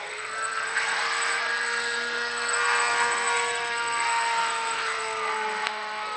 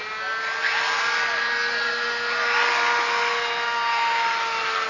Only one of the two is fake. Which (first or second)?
first